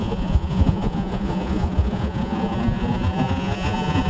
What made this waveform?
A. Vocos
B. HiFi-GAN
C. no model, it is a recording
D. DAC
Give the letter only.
A